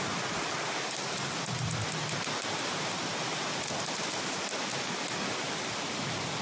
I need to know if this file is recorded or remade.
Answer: recorded